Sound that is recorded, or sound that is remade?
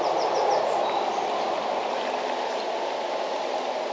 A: recorded